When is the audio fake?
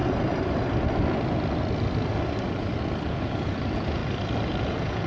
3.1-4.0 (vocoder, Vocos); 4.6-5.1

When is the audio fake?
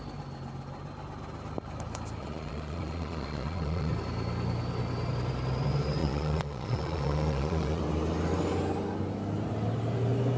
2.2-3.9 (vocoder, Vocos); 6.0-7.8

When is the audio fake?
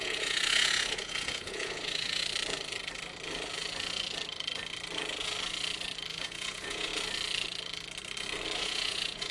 0.0-2.2 (vocoder, Vocos); 6.1-6.9; 8.6-9.3